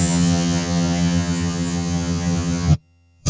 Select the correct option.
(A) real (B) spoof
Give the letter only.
B